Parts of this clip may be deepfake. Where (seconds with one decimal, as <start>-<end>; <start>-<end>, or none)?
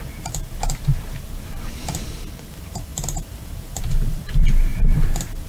0.0-5.5